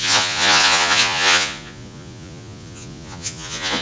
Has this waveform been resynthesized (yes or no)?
yes